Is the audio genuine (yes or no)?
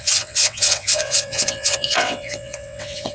no